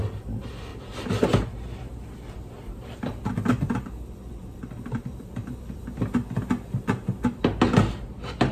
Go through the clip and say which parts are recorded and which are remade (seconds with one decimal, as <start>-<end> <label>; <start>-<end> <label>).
0.0-0.7 recorded; 0.7-5.8 remade; 5.8-8.5 recorded